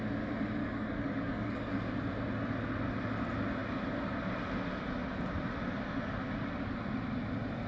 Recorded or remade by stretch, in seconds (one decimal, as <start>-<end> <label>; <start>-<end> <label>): 0.0-0.6 recorded; 0.6-1.7 remade; 1.7-7.7 recorded